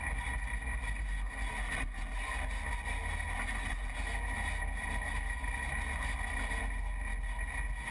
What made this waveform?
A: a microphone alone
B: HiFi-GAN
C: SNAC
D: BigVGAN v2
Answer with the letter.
A